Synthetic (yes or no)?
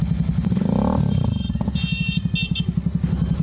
no